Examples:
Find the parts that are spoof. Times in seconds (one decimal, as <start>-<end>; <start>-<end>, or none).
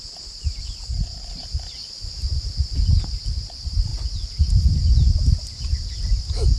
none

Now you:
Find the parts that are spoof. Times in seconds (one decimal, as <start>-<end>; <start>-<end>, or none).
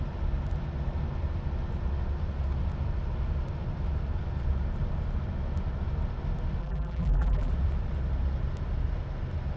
6.6-7.5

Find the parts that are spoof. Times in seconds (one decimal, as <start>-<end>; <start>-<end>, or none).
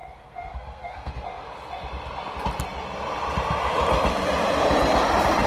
0.0-1.1